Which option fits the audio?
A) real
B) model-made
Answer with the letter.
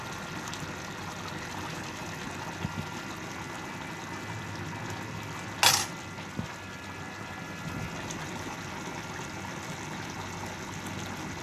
A